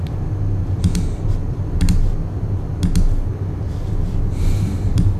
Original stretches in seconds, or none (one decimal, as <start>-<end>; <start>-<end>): 0.0-5.2